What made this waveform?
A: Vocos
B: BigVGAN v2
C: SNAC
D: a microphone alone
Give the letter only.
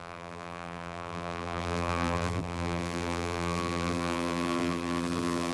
B